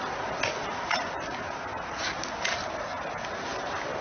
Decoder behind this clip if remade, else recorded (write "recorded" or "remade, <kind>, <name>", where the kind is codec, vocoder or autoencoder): recorded